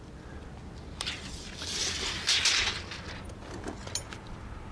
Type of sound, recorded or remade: recorded